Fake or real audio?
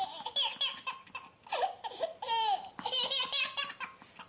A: real